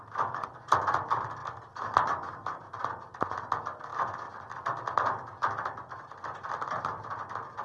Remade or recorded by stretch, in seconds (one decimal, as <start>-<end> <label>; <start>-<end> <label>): 0.0-7.6 recorded

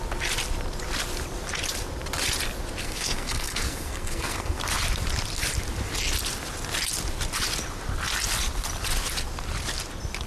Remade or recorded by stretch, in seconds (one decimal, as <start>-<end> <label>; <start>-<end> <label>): 0.0-2.8 recorded; 2.8-4.6 remade; 4.6-10.3 recorded